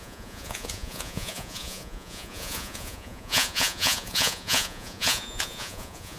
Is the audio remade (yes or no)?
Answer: yes